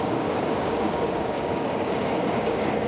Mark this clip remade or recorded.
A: remade